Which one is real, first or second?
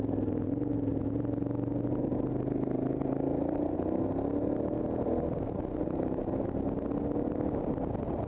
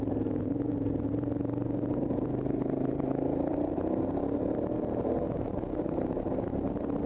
first